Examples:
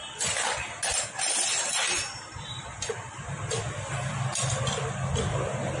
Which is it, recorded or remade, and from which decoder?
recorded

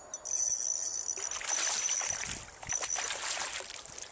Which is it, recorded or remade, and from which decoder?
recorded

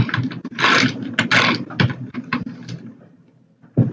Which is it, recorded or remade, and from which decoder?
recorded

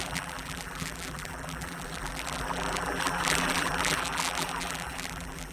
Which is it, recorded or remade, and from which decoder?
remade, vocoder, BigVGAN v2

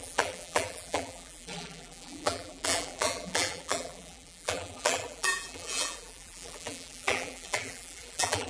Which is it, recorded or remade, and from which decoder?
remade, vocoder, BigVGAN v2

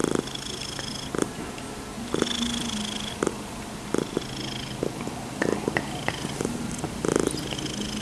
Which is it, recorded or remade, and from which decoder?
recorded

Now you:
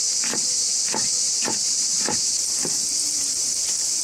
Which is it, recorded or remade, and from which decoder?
remade, vocoder, BigVGAN v2